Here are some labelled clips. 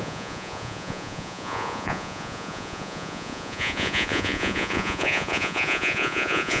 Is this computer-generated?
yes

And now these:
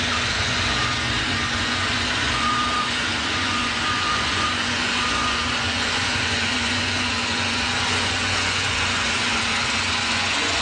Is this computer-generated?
yes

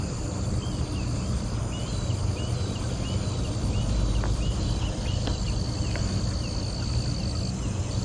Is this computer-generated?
no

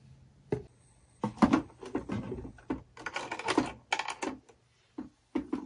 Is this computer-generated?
no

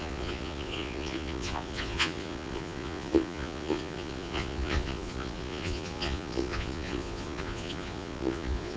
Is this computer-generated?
yes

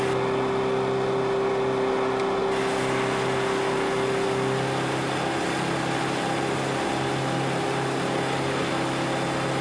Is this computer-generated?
no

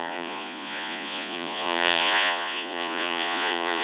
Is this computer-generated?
yes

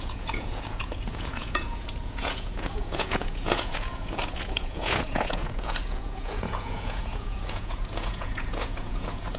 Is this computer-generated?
yes